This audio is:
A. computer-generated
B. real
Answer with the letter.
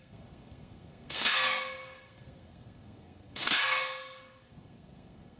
A